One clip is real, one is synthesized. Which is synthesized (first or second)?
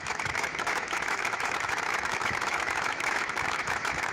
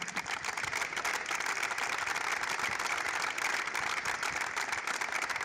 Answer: first